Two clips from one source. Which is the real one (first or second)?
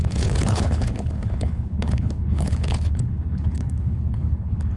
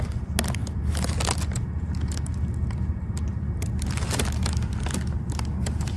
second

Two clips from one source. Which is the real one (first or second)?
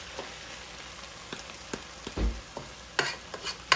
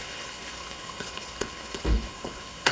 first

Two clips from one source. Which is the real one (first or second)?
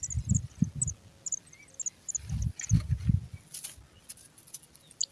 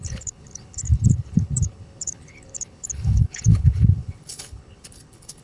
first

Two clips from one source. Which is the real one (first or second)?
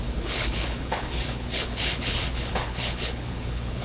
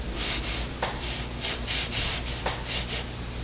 second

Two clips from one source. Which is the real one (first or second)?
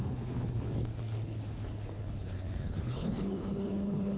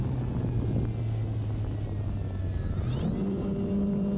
second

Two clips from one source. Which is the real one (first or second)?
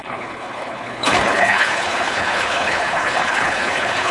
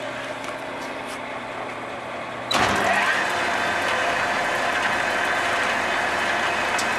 second